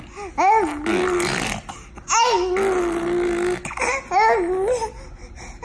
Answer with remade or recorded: recorded